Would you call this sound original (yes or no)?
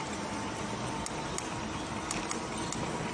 yes